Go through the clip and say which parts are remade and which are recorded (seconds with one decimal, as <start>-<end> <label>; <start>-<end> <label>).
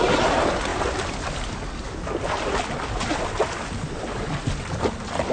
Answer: 0.0-0.7 remade; 0.7-3.9 recorded; 3.9-5.3 remade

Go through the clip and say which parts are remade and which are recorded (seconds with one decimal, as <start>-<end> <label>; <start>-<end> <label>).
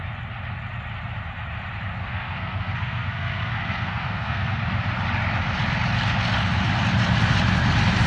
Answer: 0.0-2.0 recorded; 2.0-4.6 remade; 4.6-8.1 recorded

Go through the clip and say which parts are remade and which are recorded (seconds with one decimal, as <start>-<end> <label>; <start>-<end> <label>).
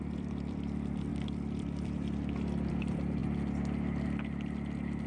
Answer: 0.0-3.2 remade; 3.2-5.1 recorded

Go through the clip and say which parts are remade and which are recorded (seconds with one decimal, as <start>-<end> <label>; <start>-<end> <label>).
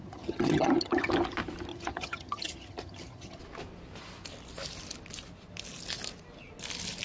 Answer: 0.0-1.1 remade; 1.1-1.7 recorded; 1.7-3.4 remade; 3.4-7.0 recorded